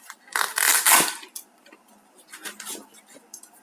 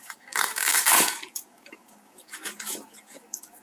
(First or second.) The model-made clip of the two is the second